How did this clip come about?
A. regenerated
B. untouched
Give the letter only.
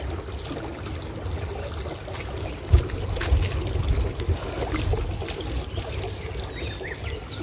B